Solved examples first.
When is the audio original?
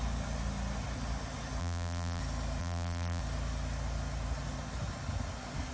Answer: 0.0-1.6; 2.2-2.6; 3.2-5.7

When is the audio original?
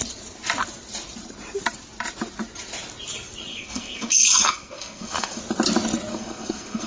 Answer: 0.0-3.5; 5.4-6.1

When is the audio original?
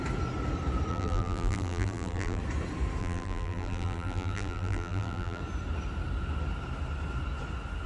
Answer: 0.0-0.9; 2.4-3.0; 5.4-7.9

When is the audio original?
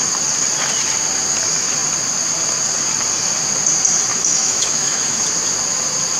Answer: 0.0-4.1; 5.2-6.2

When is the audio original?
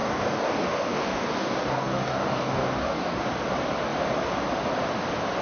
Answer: 3.2-5.4